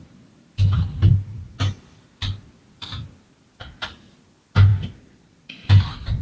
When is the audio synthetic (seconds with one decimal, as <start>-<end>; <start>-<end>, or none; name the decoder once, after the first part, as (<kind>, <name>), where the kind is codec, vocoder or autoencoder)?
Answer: 4.7-5.8 (vocoder, BigVGAN v2)